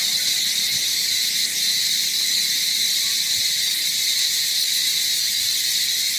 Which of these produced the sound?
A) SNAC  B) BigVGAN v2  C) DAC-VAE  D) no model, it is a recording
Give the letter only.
D